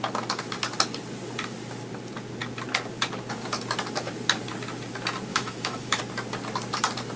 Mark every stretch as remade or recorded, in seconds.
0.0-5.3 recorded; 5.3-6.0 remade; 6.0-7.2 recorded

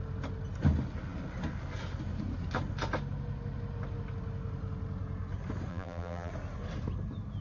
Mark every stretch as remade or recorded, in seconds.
0.0-5.7 recorded; 5.7-6.3 remade; 6.3-7.4 recorded

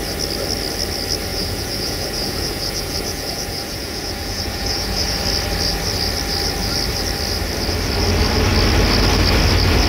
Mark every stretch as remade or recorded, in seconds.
0.0-1.3 recorded; 1.3-5.2 remade; 5.2-9.9 recorded

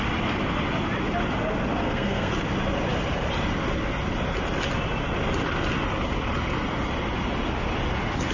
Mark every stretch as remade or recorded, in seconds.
0.0-1.8 recorded; 1.8-2.3 remade; 2.3-8.3 recorded

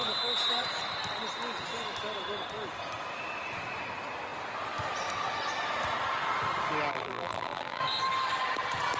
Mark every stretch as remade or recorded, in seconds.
0.0-6.9 recorded; 6.9-7.8 remade; 7.8-9.0 recorded